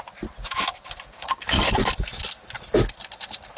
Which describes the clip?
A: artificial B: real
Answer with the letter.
B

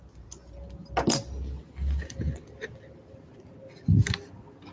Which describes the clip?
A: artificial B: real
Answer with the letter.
B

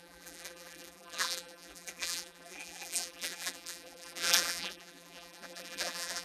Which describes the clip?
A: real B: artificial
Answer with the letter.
B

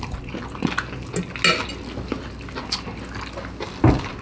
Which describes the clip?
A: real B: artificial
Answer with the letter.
A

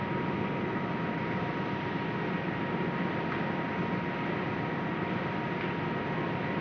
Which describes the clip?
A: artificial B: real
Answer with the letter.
B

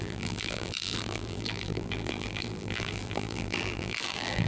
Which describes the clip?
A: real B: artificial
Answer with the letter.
B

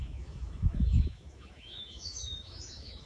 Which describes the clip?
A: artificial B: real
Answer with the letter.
A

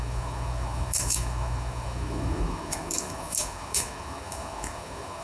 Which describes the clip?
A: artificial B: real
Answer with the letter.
A